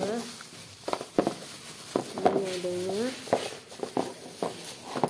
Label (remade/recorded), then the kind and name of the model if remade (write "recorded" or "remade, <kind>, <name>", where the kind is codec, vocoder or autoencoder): recorded